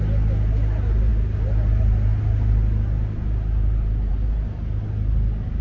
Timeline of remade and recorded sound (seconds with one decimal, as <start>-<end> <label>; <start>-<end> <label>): 0.0-5.6 recorded